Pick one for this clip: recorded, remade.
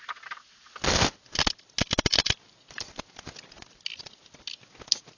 recorded